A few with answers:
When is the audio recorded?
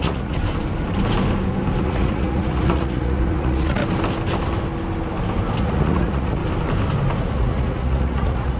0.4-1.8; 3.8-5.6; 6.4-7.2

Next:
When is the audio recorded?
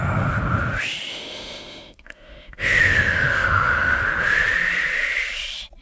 0.0-1.1; 4.0-5.8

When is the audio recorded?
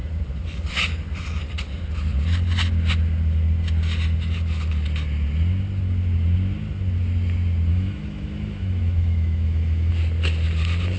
0.0-7.7; 9.9-11.0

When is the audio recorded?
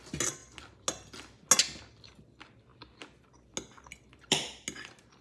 0.0-5.2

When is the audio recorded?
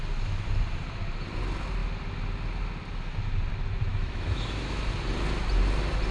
0.0-3.9; 4.8-6.1